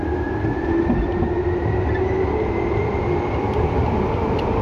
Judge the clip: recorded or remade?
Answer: recorded